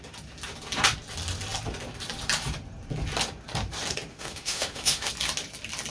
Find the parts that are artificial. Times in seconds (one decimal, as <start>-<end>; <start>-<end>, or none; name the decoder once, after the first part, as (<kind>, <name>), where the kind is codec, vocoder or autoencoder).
4.1-5.1 (autoencoder, DAC-VAE)